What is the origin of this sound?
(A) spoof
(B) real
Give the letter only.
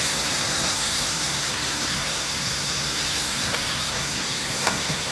A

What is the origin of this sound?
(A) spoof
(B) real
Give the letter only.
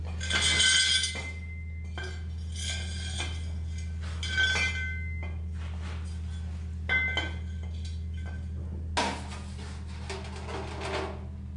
B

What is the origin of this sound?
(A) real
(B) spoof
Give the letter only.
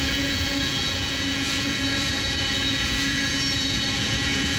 B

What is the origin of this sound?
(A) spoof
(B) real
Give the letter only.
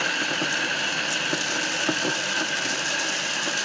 B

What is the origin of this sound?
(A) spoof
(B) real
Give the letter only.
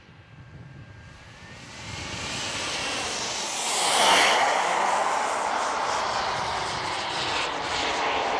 B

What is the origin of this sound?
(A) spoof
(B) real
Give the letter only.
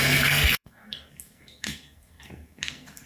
A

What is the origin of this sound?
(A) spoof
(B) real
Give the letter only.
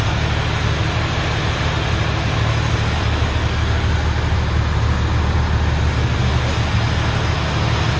B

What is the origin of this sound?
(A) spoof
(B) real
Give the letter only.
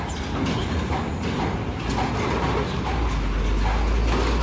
B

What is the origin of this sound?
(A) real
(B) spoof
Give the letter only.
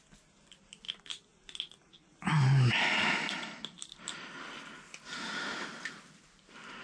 A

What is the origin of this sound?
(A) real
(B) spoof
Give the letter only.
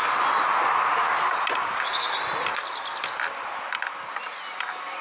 A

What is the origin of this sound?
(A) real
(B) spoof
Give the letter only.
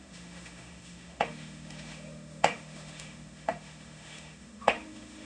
B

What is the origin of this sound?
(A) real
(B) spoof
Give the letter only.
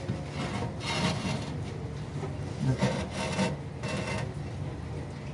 A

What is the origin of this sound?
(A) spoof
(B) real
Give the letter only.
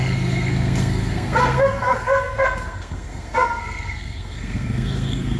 A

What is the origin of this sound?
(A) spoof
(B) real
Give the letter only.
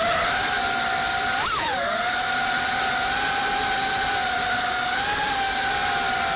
B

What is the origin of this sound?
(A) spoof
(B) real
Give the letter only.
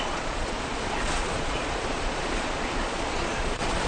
A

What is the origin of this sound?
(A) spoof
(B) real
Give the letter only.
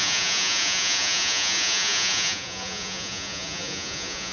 A